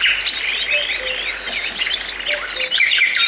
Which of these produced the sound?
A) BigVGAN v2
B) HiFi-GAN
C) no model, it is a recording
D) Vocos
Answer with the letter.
C